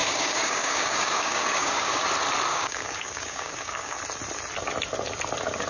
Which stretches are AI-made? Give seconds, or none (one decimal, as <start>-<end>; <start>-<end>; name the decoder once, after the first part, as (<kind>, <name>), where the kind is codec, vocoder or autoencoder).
0.0-2.0 (codec, DAC); 2.5-4.0